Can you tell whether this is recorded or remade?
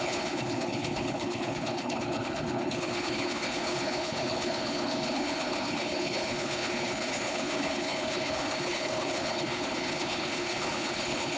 remade